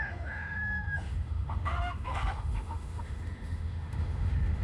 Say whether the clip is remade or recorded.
remade